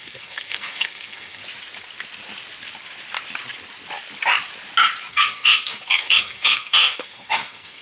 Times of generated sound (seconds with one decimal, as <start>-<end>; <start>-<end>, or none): 0.0-1.4; 5.1-7.8